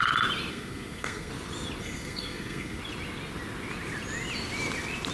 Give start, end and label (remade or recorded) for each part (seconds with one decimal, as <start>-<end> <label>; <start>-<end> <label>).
0.0-0.5 recorded; 0.5-1.3 remade; 1.3-1.8 recorded; 1.8-2.8 remade; 2.8-5.1 recorded